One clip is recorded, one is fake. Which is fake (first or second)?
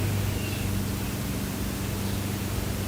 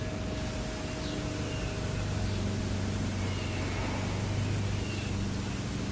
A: first